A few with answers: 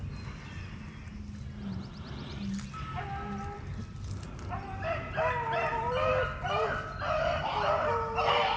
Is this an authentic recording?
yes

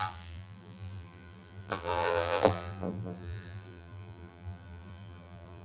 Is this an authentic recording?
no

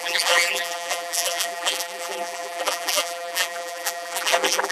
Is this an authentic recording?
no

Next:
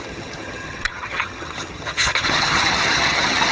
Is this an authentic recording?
no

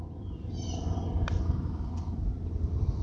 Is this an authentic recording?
no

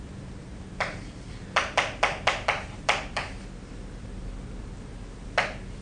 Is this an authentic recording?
no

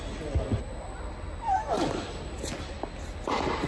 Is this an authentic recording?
yes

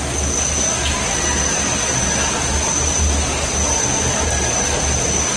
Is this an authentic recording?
yes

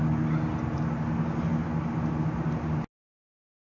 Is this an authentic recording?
yes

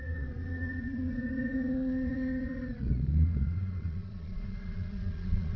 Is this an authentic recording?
no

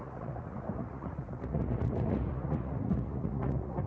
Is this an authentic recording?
no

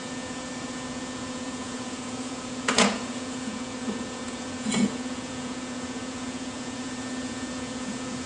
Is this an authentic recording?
no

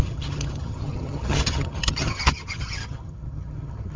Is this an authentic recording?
no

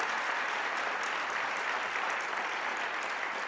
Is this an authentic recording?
no